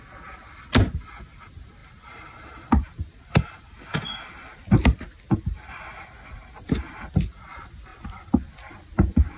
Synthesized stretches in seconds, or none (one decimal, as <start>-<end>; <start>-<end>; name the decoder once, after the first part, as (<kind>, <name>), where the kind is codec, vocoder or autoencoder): 7.9-8.9 (vocoder, BigVGAN v2)